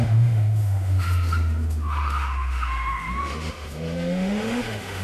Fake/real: fake